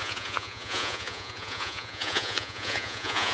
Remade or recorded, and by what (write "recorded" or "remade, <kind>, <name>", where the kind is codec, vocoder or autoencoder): remade, vocoder, Vocos